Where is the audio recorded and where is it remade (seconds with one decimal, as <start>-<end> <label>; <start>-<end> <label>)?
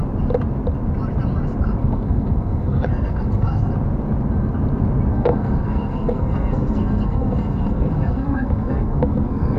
0.0-1.8 recorded; 1.8-3.7 remade; 3.7-5.1 recorded; 5.1-9.6 remade